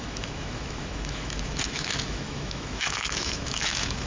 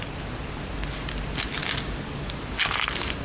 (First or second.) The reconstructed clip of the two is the first